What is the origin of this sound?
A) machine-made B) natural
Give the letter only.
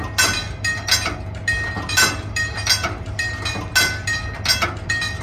B